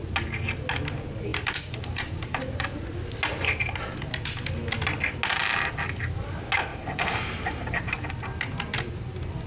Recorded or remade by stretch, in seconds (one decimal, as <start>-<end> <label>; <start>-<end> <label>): 0.0-1.3 recorded; 1.3-2.8 remade; 2.8-6.7 recorded; 6.7-8.1 remade; 8.1-9.5 recorded